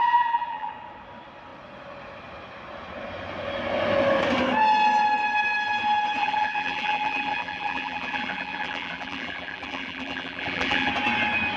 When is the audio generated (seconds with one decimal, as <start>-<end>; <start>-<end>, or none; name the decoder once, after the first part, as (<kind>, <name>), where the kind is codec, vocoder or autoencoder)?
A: 0.0-0.7 (vocoder, BigVGAN v2); 6.2-10.9